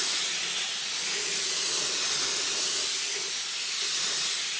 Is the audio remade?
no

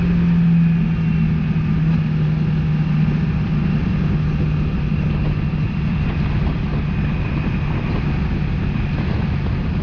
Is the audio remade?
no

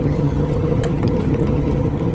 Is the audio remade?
yes